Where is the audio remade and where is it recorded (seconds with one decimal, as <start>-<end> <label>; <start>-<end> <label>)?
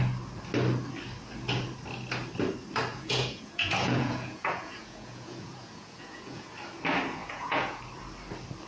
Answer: 0.0-2.9 recorded; 2.9-6.5 remade; 6.5-7.2 recorded; 7.2-7.8 remade; 7.8-8.7 recorded